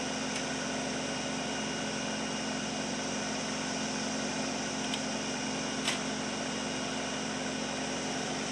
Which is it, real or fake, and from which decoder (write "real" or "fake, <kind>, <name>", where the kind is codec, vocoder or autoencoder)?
real